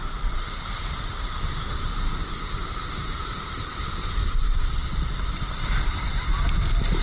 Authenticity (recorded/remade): remade